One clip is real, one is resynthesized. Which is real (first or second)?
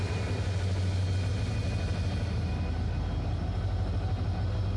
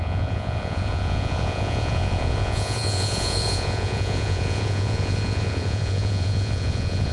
first